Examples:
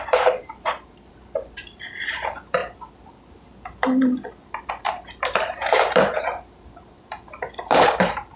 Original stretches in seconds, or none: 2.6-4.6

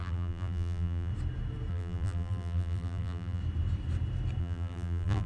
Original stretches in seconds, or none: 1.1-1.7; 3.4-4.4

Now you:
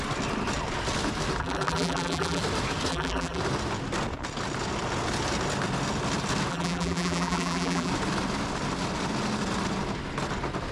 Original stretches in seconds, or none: 0.0-1.4; 2.4-2.9; 3.4-6.5; 7.9-10.7

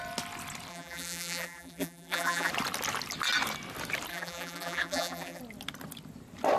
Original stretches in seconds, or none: 0.0-0.7; 2.5-4.1; 5.4-6.6